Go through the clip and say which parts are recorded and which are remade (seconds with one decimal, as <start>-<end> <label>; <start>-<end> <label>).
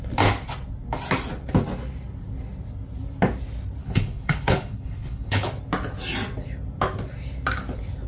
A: 0.0-3.8 recorded; 3.8-5.5 remade; 5.5-8.1 recorded